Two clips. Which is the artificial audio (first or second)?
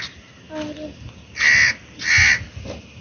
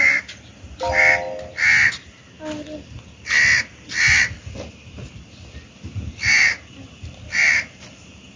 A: second